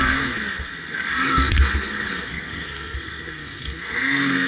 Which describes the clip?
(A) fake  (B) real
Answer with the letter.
A